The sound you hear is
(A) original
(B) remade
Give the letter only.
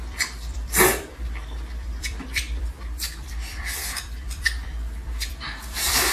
B